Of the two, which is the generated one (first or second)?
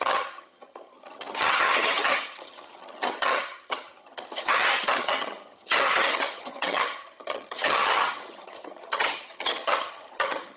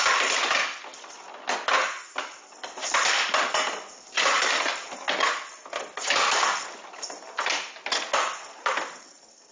first